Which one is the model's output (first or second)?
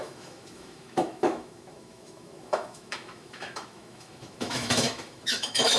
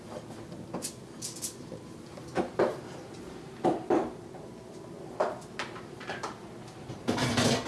first